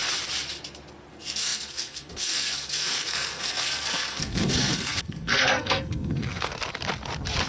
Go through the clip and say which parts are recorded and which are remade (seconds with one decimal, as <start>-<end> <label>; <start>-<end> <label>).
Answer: 0.0-1.1 recorded; 1.1-6.5 remade; 6.5-7.5 recorded